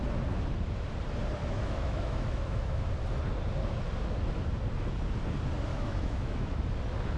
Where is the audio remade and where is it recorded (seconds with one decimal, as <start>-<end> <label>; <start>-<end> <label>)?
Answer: 0.0-1.4 recorded; 1.4-2.9 remade; 2.9-5.7 recorded; 5.7-6.6 remade; 6.6-7.2 recorded